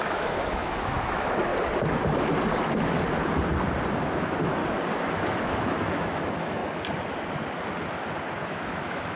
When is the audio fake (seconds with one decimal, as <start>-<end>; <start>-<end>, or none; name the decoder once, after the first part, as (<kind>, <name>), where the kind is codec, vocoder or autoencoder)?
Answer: 0.0-1.5 (autoencoder, DAC-VAE); 4.0-4.6; 5.1-6.6; 8.5-9.2